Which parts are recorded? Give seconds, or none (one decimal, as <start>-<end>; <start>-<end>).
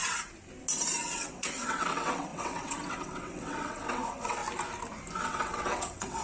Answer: 0.0-1.0; 4.4-5.2